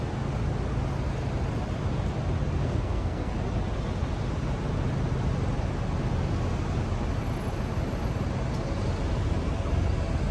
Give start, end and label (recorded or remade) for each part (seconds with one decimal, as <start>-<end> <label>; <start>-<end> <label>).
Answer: 0.0-2.6 recorded; 2.6-3.3 remade; 3.3-10.3 recorded